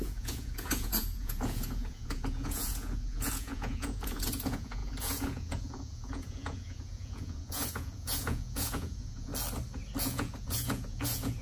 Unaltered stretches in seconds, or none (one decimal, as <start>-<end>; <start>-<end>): 9.3-10.0